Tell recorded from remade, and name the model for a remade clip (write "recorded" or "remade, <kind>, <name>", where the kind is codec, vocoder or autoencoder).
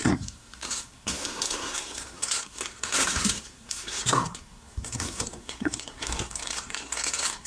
remade, codec, SNAC